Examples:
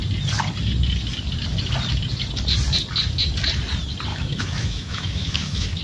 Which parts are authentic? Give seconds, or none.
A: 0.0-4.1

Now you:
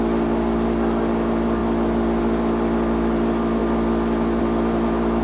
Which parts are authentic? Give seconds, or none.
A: 0.0-5.2

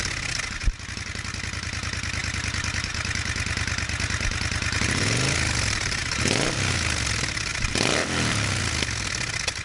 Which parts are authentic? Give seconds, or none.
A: 0.0-7.5; 8.6-9.6

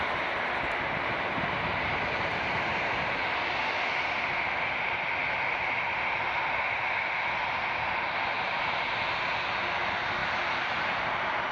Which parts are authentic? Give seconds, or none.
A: 0.0-11.5

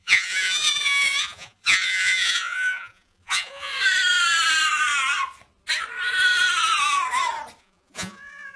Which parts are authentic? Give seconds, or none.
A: 3.7-7.6

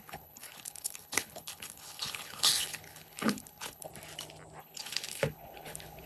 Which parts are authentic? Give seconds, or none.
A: 3.9-4.6

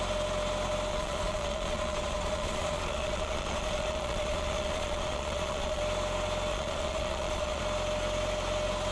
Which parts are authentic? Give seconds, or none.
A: 0.0-0.9; 5.8-6.5; 7.6-8.9

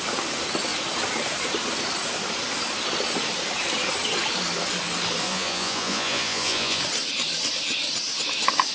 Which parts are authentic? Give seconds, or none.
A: 0.0-5.2; 6.8-8.7